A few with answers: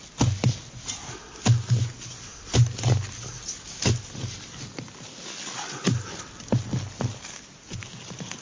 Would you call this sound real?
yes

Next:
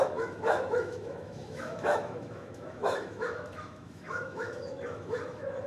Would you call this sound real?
no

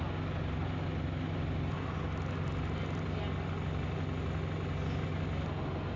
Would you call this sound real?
yes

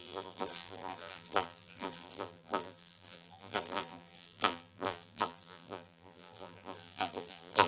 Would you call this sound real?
no